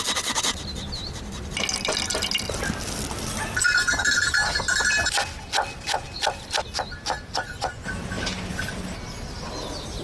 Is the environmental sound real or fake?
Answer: real